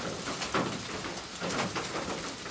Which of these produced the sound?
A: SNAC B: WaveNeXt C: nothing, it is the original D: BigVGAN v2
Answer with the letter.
C